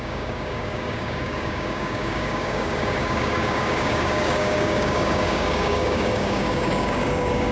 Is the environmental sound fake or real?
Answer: fake